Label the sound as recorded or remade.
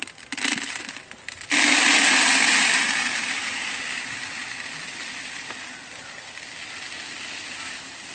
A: recorded